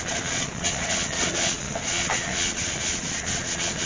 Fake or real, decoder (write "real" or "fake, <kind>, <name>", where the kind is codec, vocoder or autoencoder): fake, vocoder, WaveNeXt